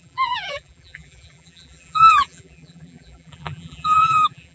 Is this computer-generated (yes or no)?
yes